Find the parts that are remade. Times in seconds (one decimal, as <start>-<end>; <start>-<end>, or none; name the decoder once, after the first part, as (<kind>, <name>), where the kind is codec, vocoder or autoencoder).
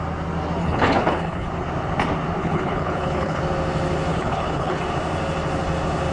0.6-1.5 (codec, HILCodec); 2.4-3.4; 4.1-4.8